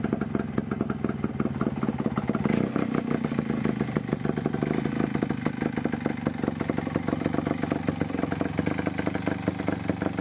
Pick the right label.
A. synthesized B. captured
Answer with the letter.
B